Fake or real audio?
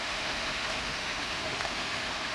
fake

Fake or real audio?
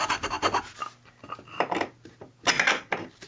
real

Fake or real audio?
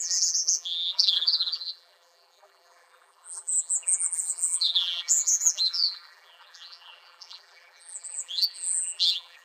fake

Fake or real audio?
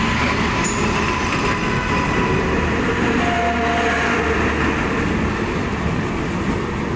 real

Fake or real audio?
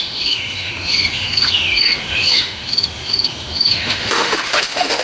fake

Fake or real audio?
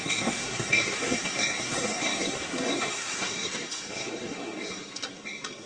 fake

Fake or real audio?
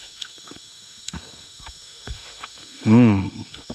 fake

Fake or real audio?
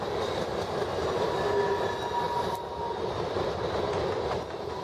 real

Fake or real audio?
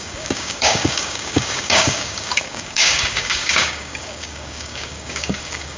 fake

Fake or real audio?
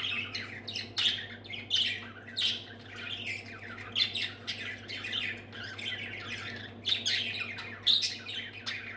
real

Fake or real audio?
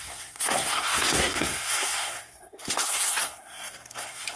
fake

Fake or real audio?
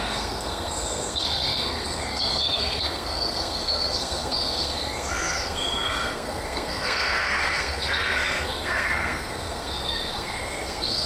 fake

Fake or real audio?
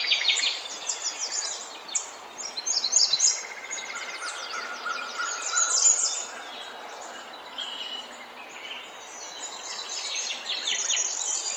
real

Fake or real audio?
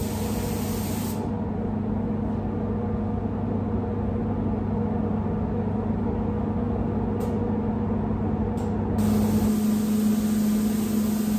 real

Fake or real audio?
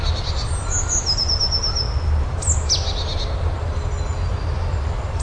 real